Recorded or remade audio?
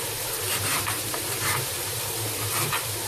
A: remade